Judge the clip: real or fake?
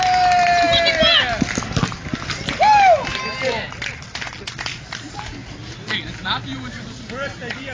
real